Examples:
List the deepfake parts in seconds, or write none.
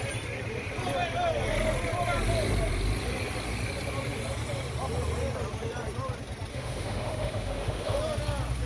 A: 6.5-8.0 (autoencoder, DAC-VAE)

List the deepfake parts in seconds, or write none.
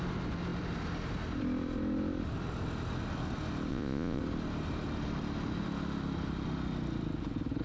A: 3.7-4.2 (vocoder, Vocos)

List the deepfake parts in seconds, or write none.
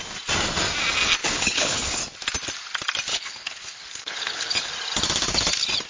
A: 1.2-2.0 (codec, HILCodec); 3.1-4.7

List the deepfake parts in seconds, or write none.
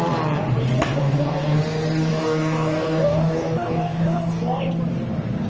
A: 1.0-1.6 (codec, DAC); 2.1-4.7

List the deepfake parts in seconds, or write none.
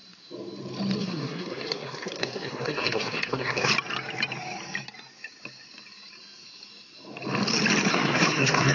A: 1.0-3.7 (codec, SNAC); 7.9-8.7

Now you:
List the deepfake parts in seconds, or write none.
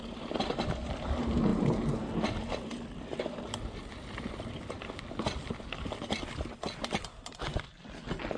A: none